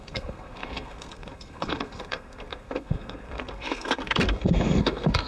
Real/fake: fake